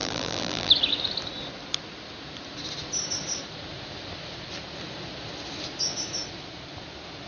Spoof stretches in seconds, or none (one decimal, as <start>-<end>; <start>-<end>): 0.0-0.7